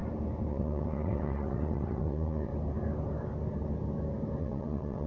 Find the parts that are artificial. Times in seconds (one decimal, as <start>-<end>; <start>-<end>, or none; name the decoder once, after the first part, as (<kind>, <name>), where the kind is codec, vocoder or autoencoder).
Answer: 0.5-2.5 (vocoder, WaveNeXt); 4.4-5.1